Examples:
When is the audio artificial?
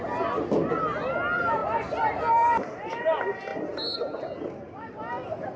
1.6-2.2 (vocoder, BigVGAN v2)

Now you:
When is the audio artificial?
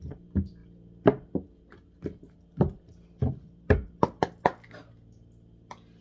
none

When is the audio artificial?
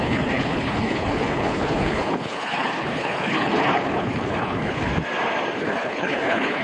0.0-4.9 (codec, HILCodec); 5.6-6.6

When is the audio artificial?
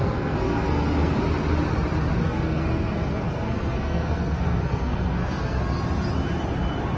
0.0-1.2 (codec, SNAC); 2.2-5.6